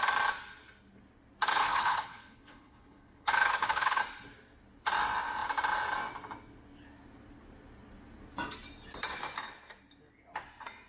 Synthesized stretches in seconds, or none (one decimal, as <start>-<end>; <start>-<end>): 1.5-4.0